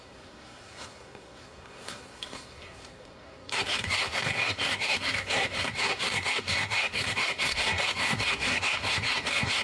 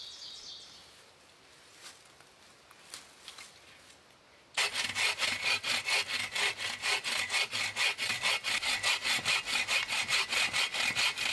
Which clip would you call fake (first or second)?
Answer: first